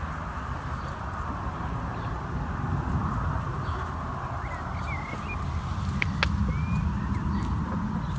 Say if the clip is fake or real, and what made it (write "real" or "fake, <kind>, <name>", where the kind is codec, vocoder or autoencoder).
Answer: real